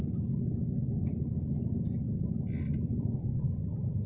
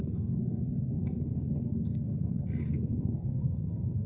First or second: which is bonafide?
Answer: first